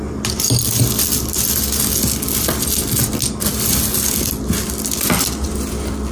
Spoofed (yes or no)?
no